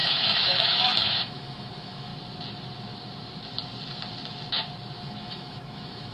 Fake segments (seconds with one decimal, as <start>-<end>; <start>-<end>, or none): 0.0-2.1; 5.0-6.1